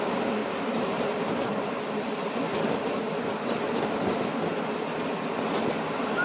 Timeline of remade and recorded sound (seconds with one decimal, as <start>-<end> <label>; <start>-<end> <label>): 0.0-0.4 recorded; 0.4-2.0 remade; 2.0-6.2 recorded